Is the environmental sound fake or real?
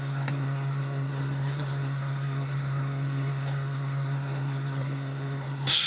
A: fake